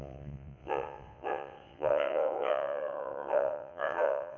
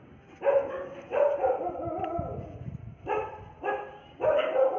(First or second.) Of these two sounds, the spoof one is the first